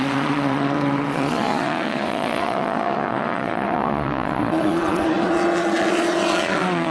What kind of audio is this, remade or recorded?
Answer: remade